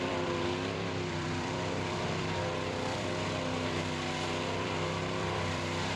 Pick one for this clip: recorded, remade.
remade